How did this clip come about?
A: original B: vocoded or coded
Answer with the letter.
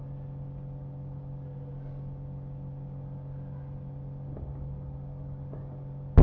A